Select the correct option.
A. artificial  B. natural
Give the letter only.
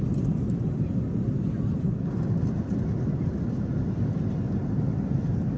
A